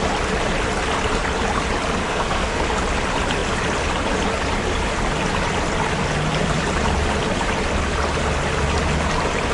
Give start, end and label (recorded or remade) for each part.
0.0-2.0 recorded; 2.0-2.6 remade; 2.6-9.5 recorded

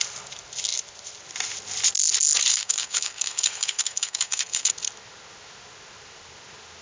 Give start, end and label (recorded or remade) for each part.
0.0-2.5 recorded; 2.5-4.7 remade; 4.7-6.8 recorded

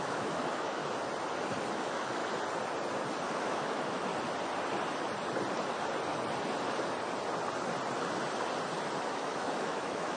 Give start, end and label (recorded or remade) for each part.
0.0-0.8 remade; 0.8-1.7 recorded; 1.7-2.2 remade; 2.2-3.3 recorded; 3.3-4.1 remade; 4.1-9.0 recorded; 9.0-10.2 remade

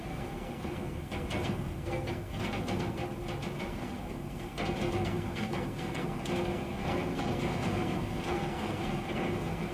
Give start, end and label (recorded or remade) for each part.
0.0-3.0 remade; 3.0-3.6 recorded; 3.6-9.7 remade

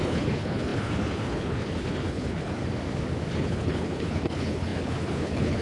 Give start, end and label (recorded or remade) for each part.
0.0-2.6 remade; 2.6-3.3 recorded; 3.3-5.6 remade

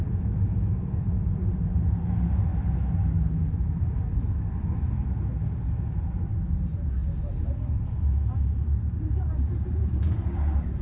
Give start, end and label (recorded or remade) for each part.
0.0-2.5 remade; 2.5-5.9 recorded; 5.9-7.0 remade; 7.0-8.6 recorded; 8.6-10.8 remade

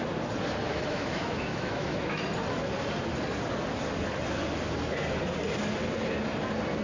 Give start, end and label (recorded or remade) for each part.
0.0-0.7 recorded; 0.7-2.2 remade; 2.2-6.8 recorded